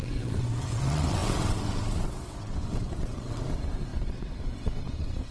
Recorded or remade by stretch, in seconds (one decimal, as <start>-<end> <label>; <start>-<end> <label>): 0.0-5.3 remade